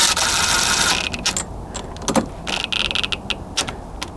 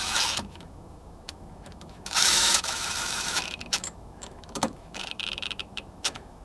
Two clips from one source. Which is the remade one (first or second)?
second